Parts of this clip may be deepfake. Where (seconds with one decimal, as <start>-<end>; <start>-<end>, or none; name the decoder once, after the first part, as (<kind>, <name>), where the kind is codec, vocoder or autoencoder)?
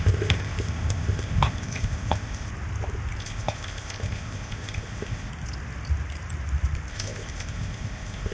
0.0-2.5 (codec, ZipCodec); 3.2-5.3; 6.9-8.3